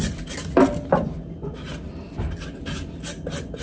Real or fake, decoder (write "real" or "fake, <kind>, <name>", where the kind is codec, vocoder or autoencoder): real